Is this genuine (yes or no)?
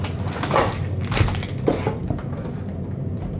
yes